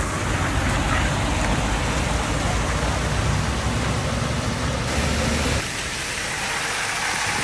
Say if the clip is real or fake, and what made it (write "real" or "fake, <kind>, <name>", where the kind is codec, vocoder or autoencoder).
real